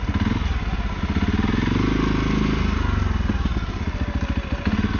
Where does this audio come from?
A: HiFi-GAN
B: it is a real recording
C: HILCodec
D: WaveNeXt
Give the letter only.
B